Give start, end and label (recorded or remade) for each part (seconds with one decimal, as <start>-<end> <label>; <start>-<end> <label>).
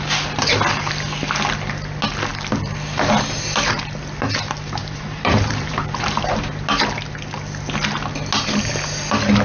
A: 0.0-4.8 recorded; 4.8-6.4 remade; 6.4-9.4 recorded